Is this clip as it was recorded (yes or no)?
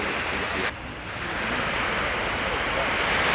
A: yes